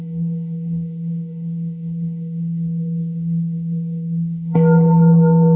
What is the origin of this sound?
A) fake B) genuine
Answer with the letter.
A